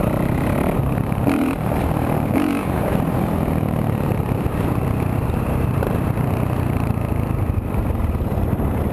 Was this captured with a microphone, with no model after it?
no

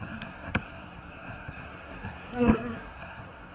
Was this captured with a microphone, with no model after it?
no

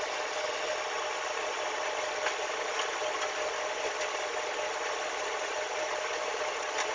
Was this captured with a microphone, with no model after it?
yes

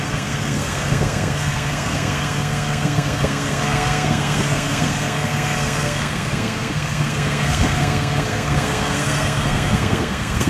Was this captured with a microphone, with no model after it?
no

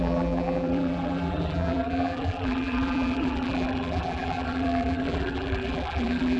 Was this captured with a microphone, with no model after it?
no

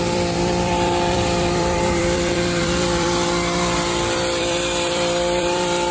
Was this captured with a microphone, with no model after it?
no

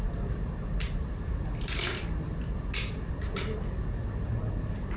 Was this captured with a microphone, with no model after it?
yes